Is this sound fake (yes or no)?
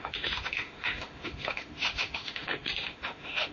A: yes